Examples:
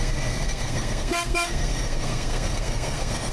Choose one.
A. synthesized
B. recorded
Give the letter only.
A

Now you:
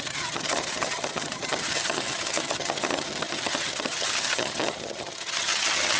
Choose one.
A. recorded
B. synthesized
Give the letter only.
B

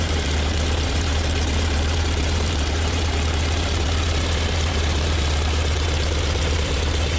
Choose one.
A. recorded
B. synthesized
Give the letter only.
B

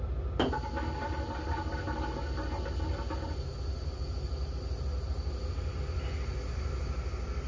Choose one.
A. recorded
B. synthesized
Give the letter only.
A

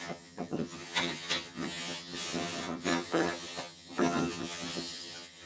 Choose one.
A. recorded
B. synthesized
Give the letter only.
B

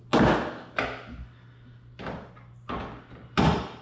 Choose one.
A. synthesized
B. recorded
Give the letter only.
B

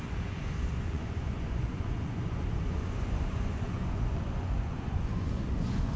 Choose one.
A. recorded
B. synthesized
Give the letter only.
B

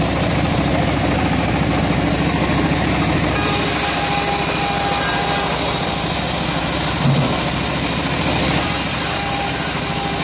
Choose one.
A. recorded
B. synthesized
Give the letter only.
A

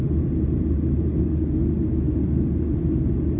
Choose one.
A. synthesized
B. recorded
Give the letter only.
B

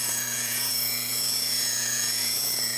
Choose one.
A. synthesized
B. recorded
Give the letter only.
A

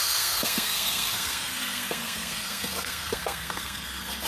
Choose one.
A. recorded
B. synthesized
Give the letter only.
B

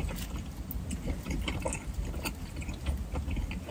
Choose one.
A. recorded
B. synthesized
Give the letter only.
A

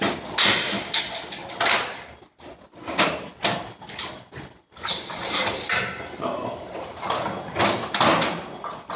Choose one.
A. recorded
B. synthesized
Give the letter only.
A